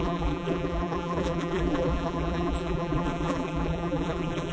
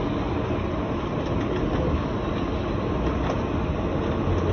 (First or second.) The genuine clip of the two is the second